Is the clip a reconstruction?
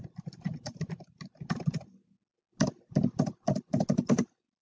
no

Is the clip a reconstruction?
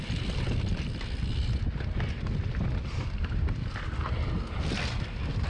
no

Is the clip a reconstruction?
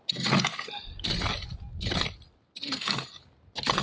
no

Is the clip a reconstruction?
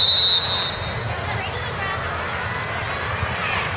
no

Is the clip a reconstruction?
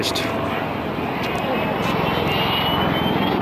no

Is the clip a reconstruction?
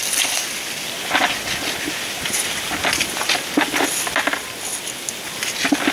no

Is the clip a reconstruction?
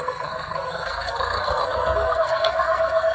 yes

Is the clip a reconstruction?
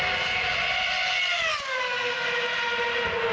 no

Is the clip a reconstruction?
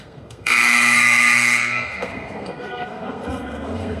yes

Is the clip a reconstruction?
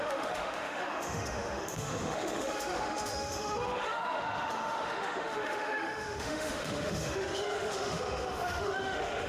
yes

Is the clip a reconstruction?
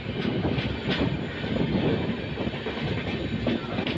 no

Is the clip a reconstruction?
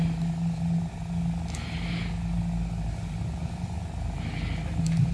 no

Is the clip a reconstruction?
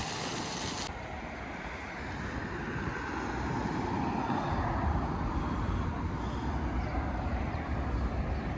no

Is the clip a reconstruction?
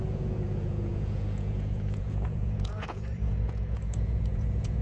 yes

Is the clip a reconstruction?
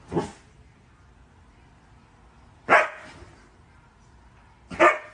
no